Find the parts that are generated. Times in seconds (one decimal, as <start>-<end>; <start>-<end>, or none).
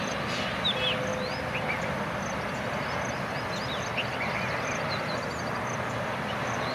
none